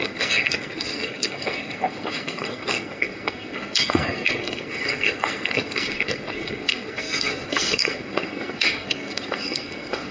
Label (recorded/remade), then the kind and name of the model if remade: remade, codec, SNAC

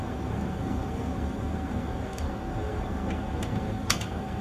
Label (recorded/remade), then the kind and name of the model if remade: remade, codec, SNAC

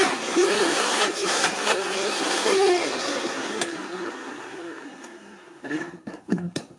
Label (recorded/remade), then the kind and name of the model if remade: remade, codec, SNAC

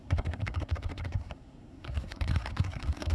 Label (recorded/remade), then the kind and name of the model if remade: remade, codec, SNAC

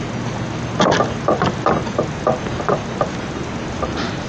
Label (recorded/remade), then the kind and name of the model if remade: recorded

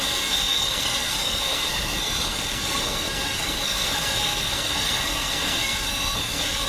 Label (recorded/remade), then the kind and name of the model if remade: remade, codec, SNAC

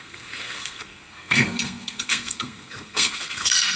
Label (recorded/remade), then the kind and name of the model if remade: remade, codec, SNAC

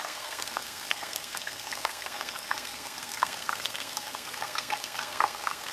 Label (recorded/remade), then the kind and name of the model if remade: remade, codec, SNAC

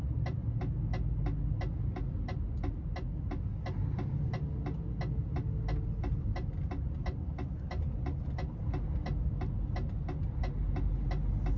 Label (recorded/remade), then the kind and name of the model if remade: recorded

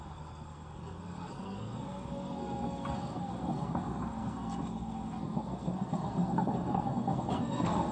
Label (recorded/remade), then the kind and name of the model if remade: remade, codec, SNAC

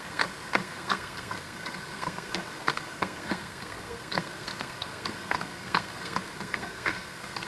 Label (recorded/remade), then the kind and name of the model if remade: remade, codec, SNAC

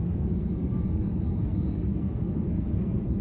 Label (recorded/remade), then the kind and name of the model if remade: remade, codec, SNAC